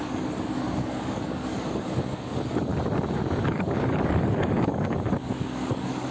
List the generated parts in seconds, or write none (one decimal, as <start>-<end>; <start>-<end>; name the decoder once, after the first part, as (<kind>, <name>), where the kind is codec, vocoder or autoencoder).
0.0-2.7 (codec, DAC); 3.2-6.1